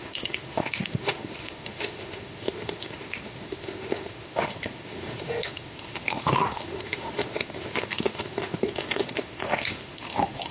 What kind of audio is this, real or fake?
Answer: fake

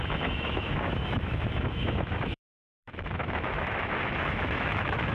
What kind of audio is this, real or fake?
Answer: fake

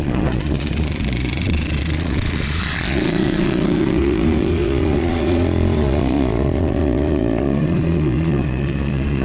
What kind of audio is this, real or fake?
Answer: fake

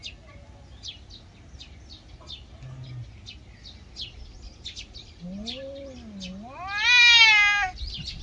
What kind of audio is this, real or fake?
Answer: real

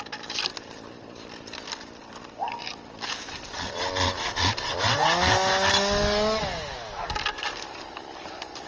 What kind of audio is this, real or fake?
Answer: real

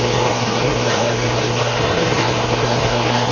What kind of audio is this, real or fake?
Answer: fake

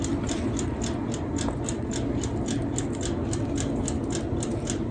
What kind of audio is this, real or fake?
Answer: real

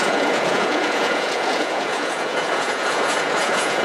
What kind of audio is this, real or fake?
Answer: fake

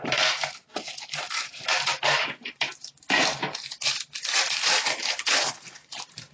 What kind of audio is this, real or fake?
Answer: fake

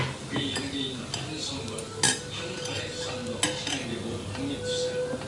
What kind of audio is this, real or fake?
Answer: real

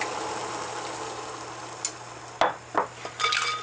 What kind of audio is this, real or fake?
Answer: real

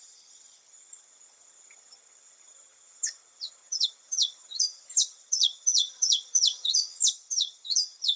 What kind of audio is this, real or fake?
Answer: fake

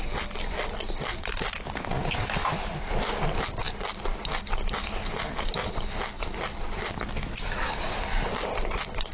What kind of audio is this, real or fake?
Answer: real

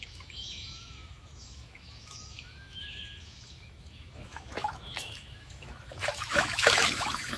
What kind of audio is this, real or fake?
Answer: fake